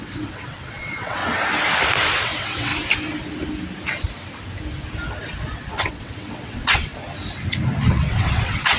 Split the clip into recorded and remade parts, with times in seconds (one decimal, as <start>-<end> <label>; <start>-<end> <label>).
0.0-1.2 remade; 1.2-2.2 recorded; 2.2-2.7 remade; 2.7-5.8 recorded; 5.8-6.9 remade; 6.9-7.9 recorded; 7.9-8.8 remade